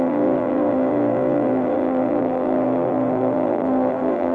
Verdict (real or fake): fake